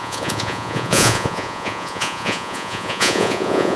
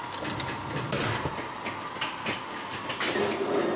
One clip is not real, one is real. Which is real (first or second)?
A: second